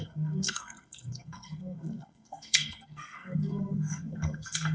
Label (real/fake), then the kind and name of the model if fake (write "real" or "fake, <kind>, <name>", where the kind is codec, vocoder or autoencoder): fake, codec, SNAC